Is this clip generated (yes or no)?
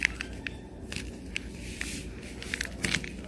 no